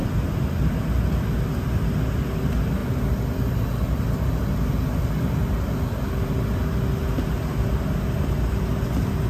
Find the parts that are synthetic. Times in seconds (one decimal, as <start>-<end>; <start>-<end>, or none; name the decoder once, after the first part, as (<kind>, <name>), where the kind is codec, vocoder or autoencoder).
none

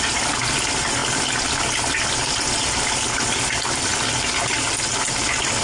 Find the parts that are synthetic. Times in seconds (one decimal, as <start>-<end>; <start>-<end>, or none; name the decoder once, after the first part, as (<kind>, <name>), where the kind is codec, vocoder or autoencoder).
3.9-4.9 (vocoder, BigVGAN v2)

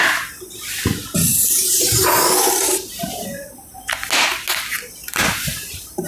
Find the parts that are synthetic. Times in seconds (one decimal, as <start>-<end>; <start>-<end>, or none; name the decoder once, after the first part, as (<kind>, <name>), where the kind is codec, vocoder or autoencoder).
1.3-3.7 (vocoder, BigVGAN v2); 5.0-6.1

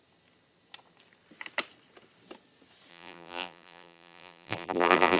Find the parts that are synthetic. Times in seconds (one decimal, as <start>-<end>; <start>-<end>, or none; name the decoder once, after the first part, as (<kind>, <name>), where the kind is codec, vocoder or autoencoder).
2.9-5.2 (vocoder, BigVGAN v2)

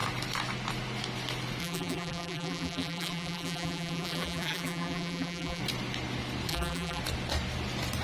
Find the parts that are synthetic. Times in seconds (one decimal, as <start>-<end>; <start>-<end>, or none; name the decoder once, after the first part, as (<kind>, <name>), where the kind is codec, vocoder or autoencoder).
1.6-5.6 (vocoder, BigVGAN v2); 6.5-7.0